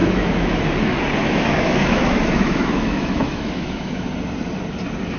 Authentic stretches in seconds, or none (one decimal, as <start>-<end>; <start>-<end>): 0.6-1.2; 4.1-5.2